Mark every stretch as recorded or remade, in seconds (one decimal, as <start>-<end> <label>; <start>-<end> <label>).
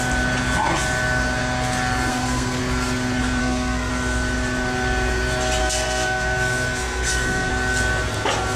0.0-2.1 recorded; 2.1-2.6 remade; 2.6-3.4 recorded; 3.4-3.9 remade; 3.9-5.6 recorded; 5.6-7.5 remade; 7.5-8.6 recorded